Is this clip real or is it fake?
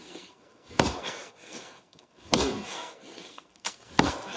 fake